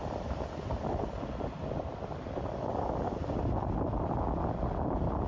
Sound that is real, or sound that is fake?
real